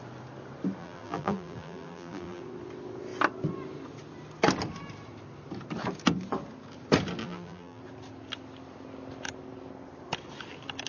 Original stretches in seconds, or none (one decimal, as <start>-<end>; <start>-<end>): 0.0-0.8; 2.4-7.2; 7.8-10.9

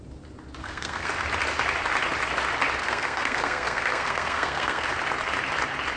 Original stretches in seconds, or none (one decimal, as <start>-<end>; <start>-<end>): 0.0-0.6; 1.1-2.8; 4.9-6.0

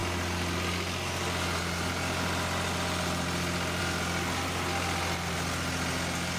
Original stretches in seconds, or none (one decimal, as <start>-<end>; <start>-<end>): 0.0-6.4

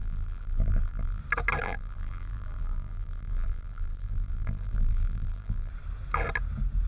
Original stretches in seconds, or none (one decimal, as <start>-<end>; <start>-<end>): 1.2-1.6; 5.7-6.9